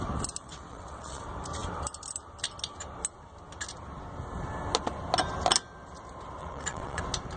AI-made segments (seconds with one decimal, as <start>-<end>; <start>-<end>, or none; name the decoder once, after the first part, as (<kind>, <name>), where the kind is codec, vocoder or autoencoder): 0.4-1.2 (vocoder, WaveNeXt); 6.4-7.0